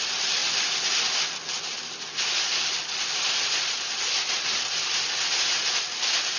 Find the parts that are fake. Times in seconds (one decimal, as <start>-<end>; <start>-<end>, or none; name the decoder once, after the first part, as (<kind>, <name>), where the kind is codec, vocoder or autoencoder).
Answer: none